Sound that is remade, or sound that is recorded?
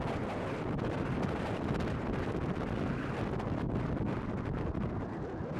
recorded